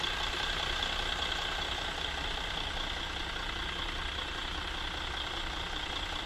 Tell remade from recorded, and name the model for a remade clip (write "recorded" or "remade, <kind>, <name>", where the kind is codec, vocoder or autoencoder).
recorded